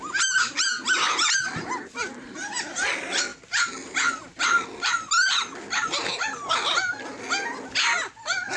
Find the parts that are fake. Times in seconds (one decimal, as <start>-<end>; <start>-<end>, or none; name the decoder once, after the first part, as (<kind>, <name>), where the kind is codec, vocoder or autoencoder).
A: none